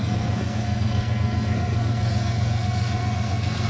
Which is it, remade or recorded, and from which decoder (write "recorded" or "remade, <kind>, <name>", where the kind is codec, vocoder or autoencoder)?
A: remade, codec, SNAC